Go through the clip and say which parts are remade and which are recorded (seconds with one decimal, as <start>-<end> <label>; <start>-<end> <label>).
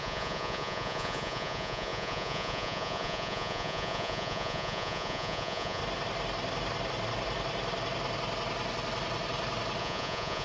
0.0-5.8 remade; 5.8-9.8 recorded; 9.8-10.4 remade